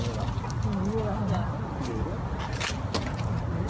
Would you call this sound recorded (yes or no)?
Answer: yes